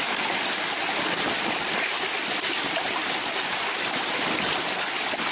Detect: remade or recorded recorded